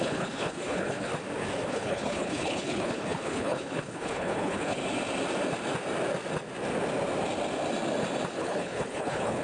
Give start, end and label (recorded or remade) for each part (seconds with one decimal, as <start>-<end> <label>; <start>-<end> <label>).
0.0-1.1 remade; 1.1-1.7 recorded; 1.7-4.8 remade; 4.8-8.4 recorded; 8.4-9.4 remade